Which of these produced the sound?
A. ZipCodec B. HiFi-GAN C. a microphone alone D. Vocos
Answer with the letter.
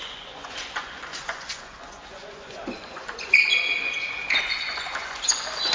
D